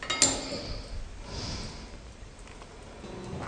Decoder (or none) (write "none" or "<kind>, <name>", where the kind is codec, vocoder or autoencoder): none